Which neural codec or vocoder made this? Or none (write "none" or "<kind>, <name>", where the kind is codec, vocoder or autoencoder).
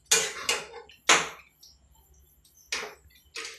none